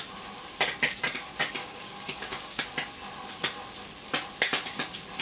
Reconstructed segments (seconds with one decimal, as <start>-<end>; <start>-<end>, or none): 1.6-2.6